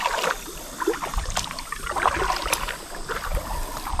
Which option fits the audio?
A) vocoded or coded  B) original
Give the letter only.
B